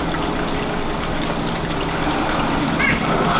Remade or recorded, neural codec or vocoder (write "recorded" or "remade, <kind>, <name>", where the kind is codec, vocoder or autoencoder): recorded